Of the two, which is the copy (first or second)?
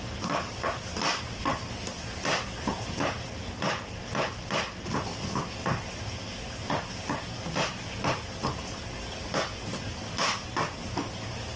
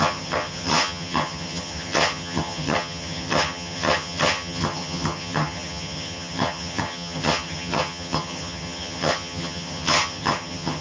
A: second